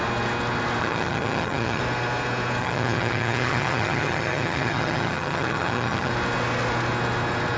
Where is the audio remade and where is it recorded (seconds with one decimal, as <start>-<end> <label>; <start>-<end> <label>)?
0.0-0.8 recorded; 0.8-1.8 remade; 1.8-2.6 recorded; 2.6-6.1 remade; 6.1-7.6 recorded